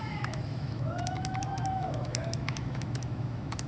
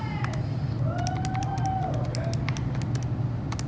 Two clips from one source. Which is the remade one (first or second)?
first